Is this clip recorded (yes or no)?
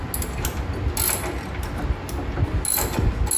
yes